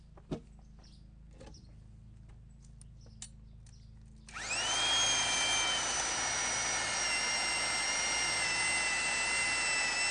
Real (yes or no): yes